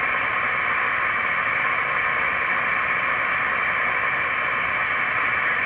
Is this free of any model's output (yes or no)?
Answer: yes